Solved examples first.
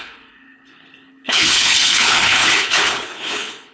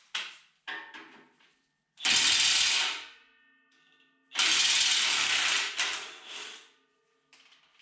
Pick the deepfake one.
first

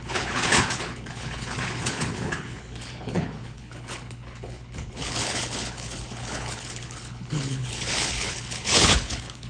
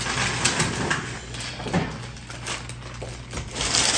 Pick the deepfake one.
first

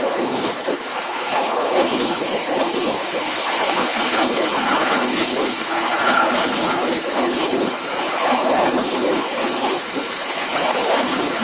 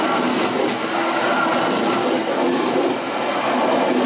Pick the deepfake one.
first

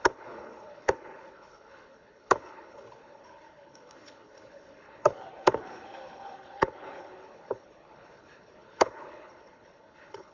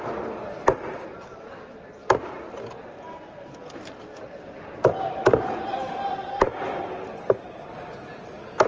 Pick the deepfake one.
first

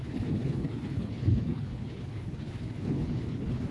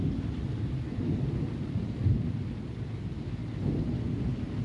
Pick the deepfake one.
first